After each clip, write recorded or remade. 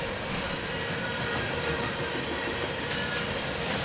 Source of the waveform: recorded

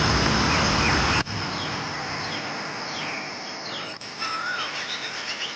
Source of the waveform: recorded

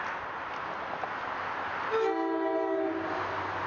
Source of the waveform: recorded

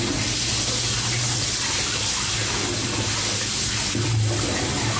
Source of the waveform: recorded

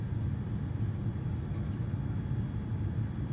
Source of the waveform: recorded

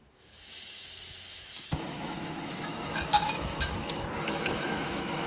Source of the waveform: remade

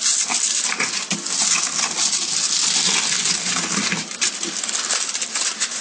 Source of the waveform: recorded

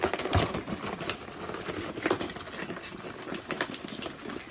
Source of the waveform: recorded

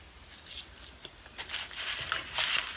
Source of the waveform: recorded